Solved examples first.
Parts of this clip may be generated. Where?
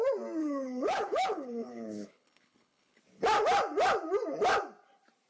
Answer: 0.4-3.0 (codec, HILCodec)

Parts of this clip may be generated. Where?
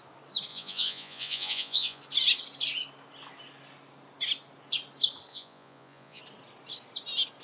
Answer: 0.5-2.0 (vocoder, Vocos); 5.3-6.2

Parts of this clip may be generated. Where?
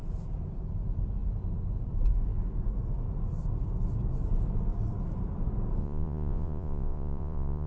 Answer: 5.8-7.7 (vocoder, Vocos)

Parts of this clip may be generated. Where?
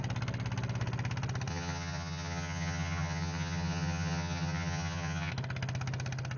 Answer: 1.5-5.3 (vocoder, HiFi-GAN)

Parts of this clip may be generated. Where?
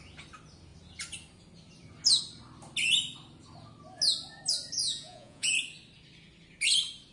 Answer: 4.8-5.5 (vocoder, Vocos)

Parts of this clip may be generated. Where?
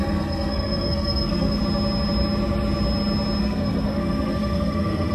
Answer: 0.0-1.6 (codec, SNAC); 3.4-5.1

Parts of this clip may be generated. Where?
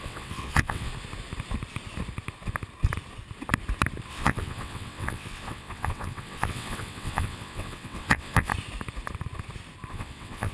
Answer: 0.0-0.9 (vocoder, WaveNeXt); 4.1-8.5; 9.9-10.5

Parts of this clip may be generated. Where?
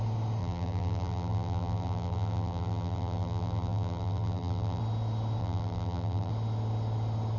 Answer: 0.4-4.8 (vocoder, BigVGAN v2); 5.4-6.3